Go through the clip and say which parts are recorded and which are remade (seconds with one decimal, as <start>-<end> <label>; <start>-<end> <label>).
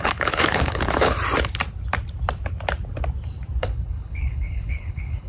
0.0-1.2 remade; 1.2-3.6 recorded; 3.6-5.3 remade